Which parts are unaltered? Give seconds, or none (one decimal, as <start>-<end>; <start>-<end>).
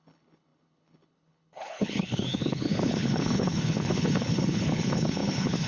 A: none